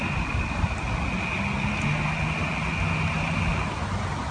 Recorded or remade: recorded